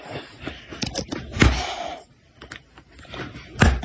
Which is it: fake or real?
real